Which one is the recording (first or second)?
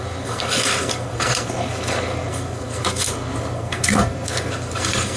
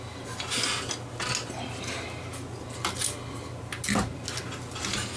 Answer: second